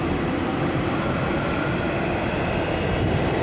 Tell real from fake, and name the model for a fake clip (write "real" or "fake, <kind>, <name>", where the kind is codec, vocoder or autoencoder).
real